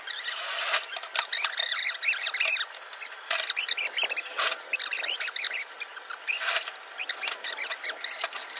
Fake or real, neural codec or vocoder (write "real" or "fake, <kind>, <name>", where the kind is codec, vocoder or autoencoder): real